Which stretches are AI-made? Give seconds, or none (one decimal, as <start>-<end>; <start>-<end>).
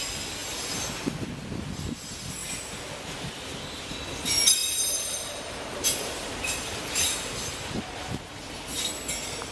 4.6-8.4